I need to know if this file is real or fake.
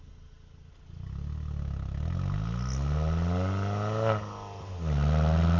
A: real